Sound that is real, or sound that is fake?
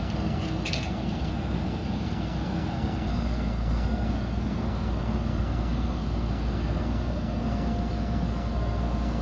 fake